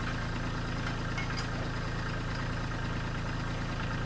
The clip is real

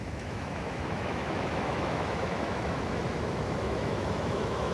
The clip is fake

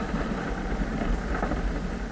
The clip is real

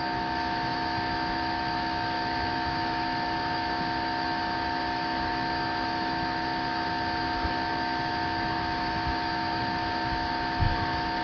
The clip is fake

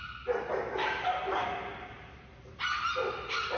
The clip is real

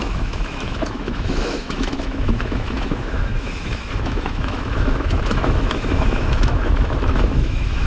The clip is fake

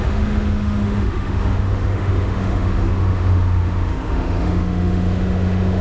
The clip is fake